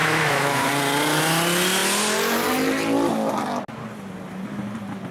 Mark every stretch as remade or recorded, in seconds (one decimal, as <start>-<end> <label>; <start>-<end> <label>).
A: 0.0-0.7 remade; 0.7-5.1 recorded